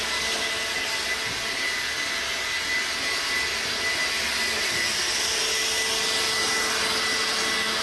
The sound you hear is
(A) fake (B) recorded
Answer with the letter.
B